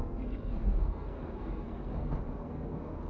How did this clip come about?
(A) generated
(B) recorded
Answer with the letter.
A